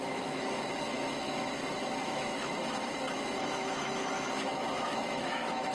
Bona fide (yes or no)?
no